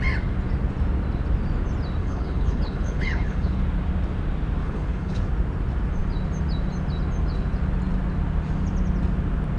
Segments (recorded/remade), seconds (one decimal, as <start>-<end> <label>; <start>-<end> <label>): 0.0-2.0 recorded; 2.0-3.6 remade; 3.6-4.6 recorded; 4.6-5.3 remade; 5.3-9.6 recorded